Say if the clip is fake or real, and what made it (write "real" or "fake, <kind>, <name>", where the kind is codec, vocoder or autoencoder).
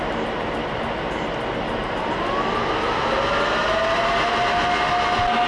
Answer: real